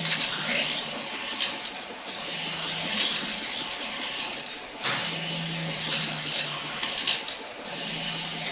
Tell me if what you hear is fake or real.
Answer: real